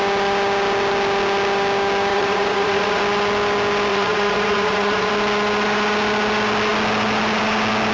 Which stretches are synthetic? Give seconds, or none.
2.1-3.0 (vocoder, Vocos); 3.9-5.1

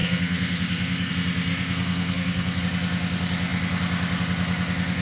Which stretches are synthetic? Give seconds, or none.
0.0-1.1 (codec, SNAC); 1.5-2.6

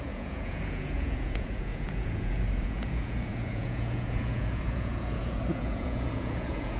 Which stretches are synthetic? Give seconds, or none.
0.0-6.8 (vocoder, Vocos)

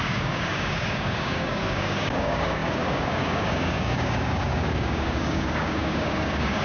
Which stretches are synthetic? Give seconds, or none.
0.0-6.6 (codec, DAC)

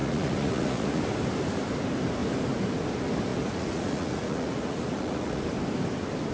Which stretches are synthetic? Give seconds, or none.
0.0-1.0 (vocoder, Vocos); 3.3-5.4

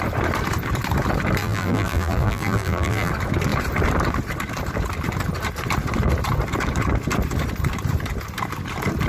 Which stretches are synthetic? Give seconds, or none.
1.4-3.1 (vocoder, BigVGAN v2)

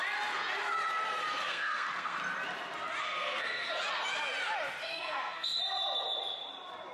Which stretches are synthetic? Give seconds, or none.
1.2-2.2 (codec, SNAC); 3.0-3.7; 4.8-5.6